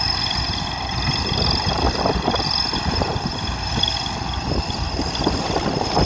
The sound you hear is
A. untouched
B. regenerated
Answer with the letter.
A